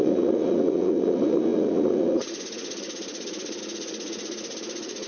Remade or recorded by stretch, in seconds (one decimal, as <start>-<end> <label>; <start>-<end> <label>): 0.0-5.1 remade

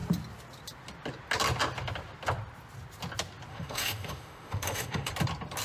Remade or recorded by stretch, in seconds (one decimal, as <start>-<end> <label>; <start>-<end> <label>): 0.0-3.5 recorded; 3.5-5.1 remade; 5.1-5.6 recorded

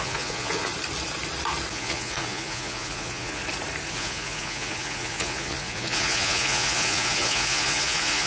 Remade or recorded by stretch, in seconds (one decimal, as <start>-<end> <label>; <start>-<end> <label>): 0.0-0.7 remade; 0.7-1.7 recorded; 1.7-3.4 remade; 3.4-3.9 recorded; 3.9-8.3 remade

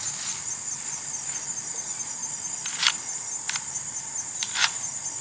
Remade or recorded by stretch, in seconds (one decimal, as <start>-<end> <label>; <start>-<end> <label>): 0.0-5.2 recorded